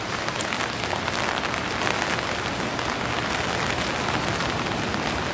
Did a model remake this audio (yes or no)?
no